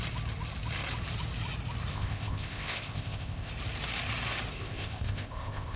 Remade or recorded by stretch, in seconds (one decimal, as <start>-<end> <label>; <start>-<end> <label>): 0.0-1.9 recorded; 1.9-3.5 remade; 3.5-4.5 recorded; 4.5-5.8 remade